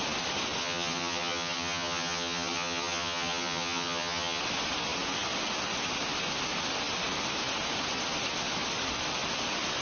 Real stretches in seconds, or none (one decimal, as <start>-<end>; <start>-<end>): 0.0-0.6; 4.4-9.8